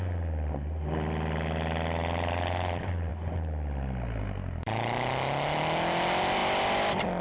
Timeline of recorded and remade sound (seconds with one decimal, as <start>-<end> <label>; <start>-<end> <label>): 0.0-7.2 recorded